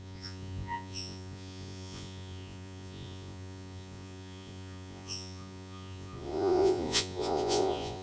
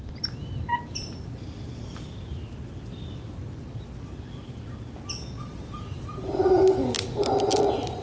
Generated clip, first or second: first